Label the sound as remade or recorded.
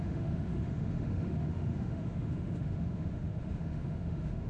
remade